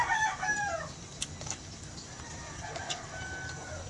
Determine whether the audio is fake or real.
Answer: real